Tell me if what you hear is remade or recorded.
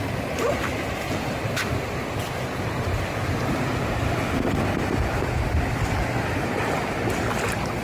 recorded